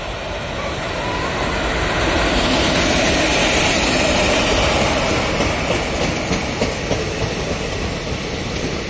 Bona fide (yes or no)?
yes